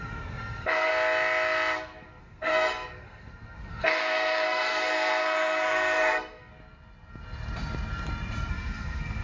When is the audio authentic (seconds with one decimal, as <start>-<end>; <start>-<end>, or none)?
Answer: 0.9-2.2; 6.5-8.5